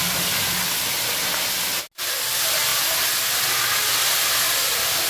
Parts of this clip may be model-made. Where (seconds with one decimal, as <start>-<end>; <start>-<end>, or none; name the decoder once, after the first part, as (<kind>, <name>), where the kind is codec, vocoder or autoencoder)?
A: none